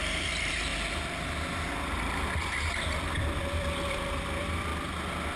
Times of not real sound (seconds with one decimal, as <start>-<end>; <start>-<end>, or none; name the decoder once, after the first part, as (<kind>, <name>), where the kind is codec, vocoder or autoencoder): 0.0-0.7 (vocoder, BigVGAN v2); 3.9-4.7